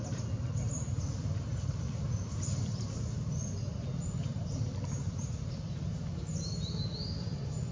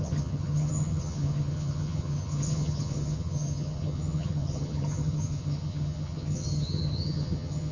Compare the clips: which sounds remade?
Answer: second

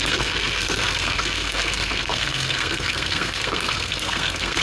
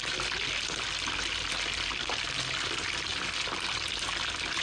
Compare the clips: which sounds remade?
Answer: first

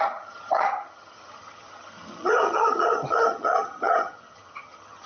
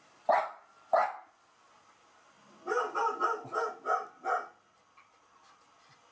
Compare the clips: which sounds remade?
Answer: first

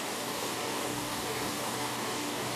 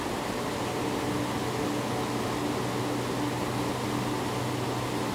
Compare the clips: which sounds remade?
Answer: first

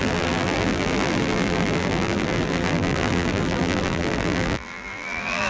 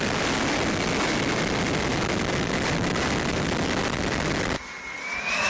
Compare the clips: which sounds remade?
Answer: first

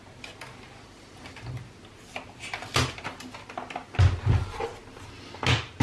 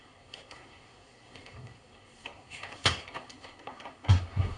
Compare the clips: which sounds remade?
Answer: second